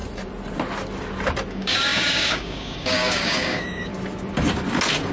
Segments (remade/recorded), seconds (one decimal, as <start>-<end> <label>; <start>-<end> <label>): 0.0-1.5 recorded; 1.5-3.9 remade; 3.9-5.1 recorded

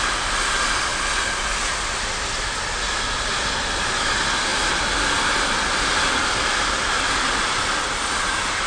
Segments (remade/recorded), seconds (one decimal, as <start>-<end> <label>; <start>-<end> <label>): 0.0-8.7 recorded

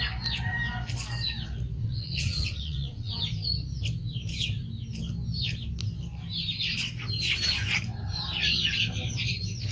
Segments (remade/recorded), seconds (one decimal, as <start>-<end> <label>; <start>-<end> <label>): 0.0-1.8 recorded; 1.8-3.2 remade; 3.2-9.7 recorded

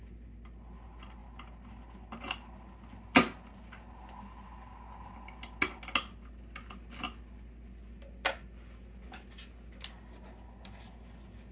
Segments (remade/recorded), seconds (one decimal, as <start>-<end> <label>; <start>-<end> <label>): 0.0-11.5 recorded

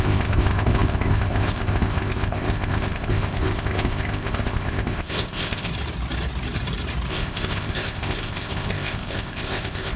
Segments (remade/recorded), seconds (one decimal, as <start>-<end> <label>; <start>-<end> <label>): 0.0-5.7 remade; 5.7-7.1 recorded; 7.1-10.0 remade

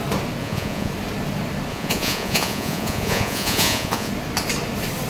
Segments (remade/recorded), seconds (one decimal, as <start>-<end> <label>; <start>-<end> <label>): 0.0-0.4 recorded; 0.4-0.9 remade; 0.9-1.7 recorded; 1.7-4.1 remade; 4.1-5.1 recorded